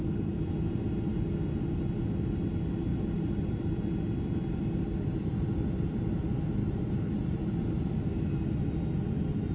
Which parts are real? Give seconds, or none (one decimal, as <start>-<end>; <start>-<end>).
0.0-2.9; 3.5-6.6; 8.2-9.5